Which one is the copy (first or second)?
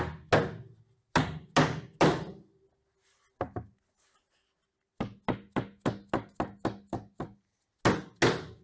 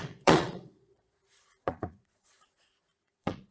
second